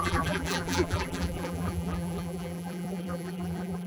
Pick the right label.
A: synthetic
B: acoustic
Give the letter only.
A